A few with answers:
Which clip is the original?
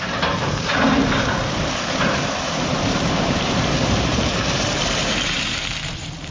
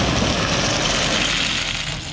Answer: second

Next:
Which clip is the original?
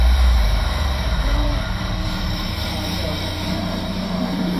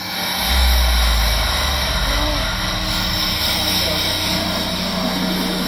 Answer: second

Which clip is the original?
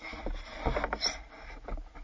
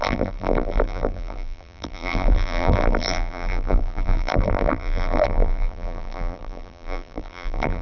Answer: first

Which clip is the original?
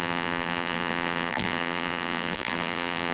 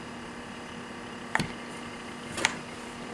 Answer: second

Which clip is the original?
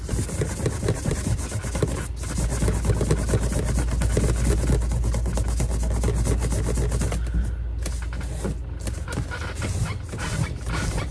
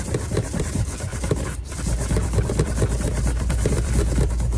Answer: first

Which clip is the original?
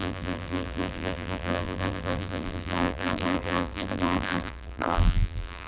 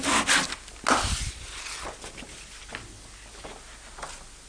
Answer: second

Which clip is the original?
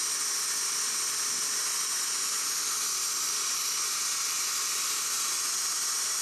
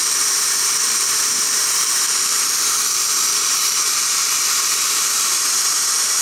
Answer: first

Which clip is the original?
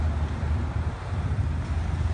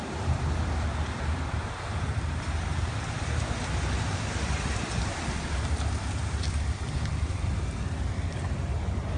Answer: first